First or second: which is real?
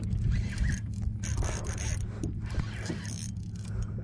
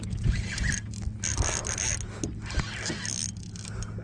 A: second